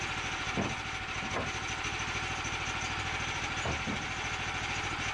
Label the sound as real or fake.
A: real